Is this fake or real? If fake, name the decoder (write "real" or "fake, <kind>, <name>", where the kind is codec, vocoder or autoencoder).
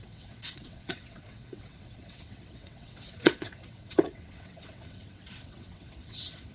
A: fake, vocoder, WaveNeXt